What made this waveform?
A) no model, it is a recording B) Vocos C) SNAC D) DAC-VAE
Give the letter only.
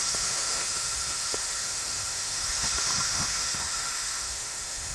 D